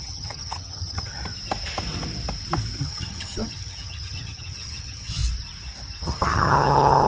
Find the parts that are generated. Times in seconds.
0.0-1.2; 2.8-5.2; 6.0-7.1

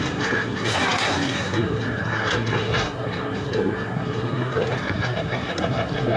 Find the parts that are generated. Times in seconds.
0.0-6.2

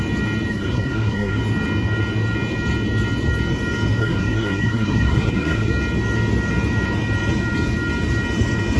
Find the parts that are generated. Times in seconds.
0.5-1.4; 4.0-5.7

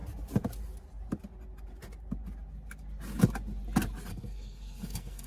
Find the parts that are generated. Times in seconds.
4.1-5.3

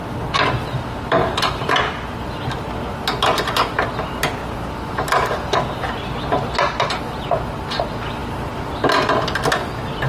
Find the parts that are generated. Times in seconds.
1.2-1.8

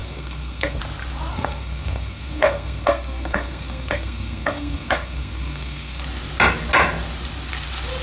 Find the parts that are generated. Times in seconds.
0.0-0.8; 1.3-6.0

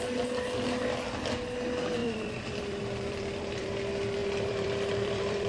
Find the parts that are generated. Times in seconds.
2.0-3.8; 4.2-5.5

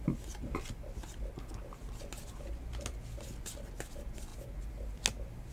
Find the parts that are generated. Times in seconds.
none